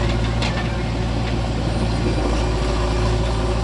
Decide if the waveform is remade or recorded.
recorded